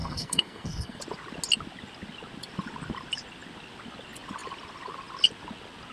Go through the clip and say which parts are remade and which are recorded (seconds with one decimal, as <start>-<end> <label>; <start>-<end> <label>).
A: 0.0-1.0 remade; 1.0-5.9 recorded